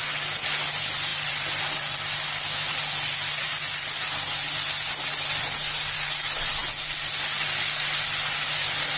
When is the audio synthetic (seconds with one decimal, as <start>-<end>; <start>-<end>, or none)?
none